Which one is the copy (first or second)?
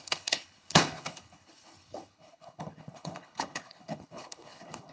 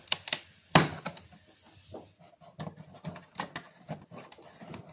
first